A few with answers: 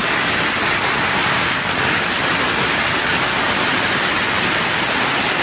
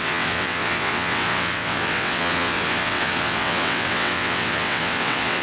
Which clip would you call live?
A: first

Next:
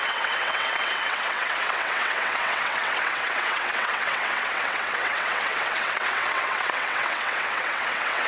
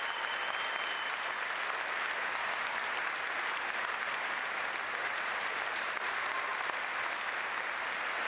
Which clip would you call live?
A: second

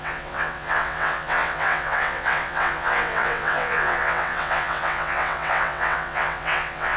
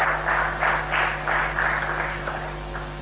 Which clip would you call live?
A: second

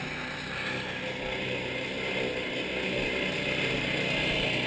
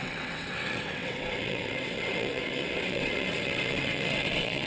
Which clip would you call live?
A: first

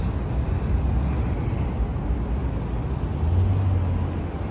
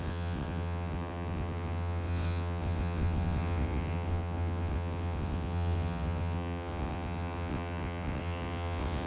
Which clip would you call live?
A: first